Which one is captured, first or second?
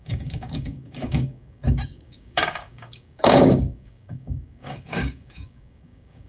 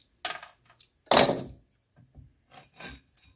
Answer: second